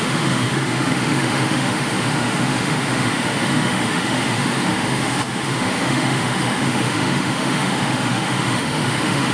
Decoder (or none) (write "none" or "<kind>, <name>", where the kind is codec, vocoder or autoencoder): autoencoder, DAC-VAE